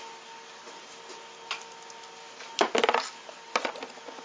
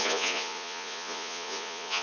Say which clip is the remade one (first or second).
second